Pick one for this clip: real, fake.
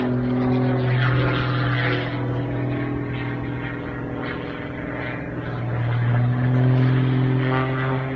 real